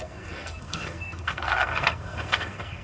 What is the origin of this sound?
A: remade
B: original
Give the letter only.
A